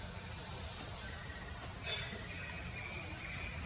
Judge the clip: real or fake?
real